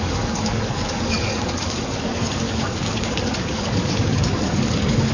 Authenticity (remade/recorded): remade